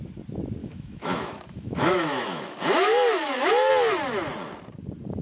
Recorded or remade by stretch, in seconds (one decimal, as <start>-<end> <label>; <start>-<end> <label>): 0.0-0.6 recorded; 0.6-3.7 remade; 3.7-5.2 recorded